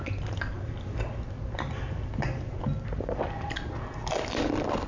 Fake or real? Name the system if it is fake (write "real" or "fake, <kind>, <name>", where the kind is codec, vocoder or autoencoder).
real